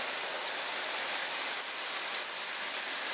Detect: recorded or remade recorded